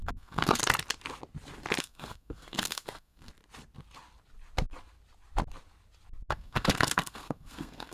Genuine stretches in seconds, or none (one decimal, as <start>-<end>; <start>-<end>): 0.6-1.8; 3.3-6.3